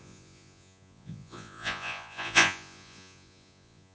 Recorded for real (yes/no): no